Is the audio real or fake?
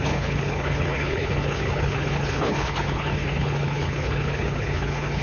fake